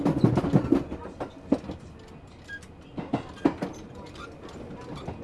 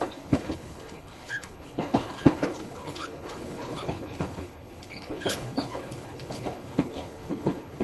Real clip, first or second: first